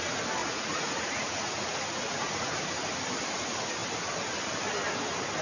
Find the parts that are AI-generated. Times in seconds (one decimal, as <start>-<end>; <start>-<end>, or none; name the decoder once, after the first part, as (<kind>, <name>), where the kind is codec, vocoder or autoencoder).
0.4-2.7 (vocoder, Vocos)